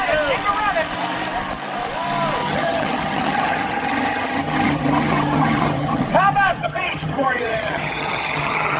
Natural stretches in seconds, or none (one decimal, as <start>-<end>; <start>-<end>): 0.0-2.4; 6.0-6.6